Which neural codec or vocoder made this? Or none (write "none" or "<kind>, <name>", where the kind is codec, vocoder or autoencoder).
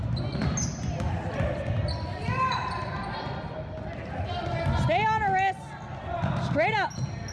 none